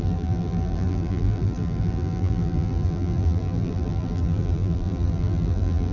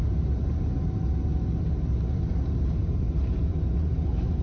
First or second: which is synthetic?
first